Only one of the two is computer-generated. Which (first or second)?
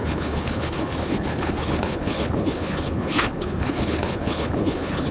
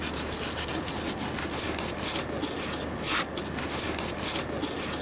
first